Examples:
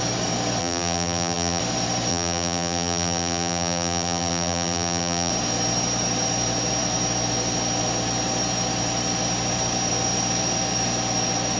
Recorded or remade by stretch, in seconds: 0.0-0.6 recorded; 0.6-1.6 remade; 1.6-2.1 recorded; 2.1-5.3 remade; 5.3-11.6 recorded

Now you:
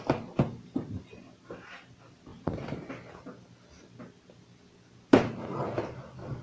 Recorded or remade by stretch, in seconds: 0.0-2.3 recorded; 2.3-2.9 remade; 2.9-6.4 recorded

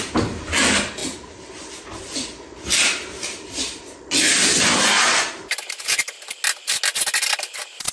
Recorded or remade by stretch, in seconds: 0.0-7.9 recorded

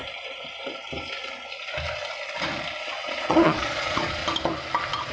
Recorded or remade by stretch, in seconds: 0.0-2.8 recorded; 2.8-4.2 remade; 4.2-5.1 recorded

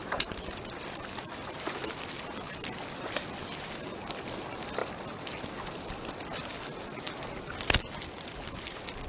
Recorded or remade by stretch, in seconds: 0.0-9.1 recorded

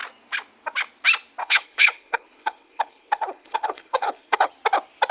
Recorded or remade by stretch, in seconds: 0.0-1.4 recorded; 1.4-4.5 remade; 4.5-5.1 recorded